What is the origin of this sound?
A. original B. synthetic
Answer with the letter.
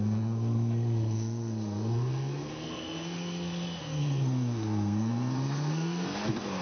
B